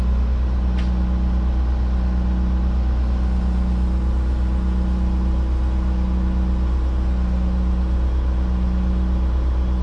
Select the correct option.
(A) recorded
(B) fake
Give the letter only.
A